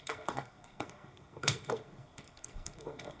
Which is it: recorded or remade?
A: remade